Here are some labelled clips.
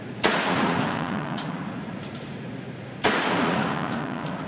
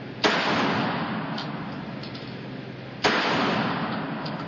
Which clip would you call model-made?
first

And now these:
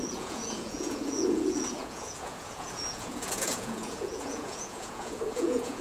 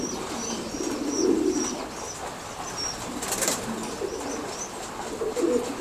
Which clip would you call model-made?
first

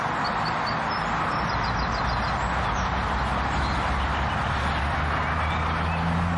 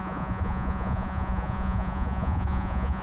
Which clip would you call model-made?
second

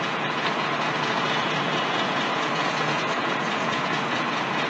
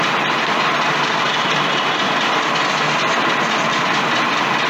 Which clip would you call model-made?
first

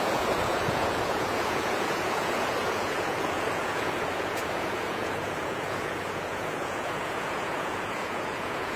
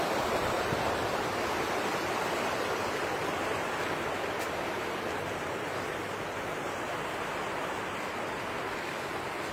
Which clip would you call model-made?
first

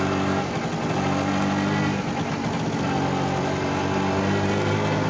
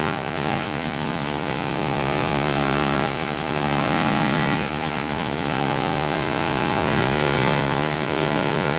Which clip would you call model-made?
second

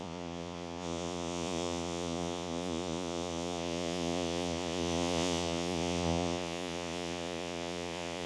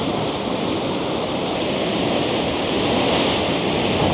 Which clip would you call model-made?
first